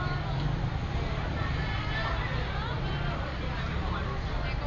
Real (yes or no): yes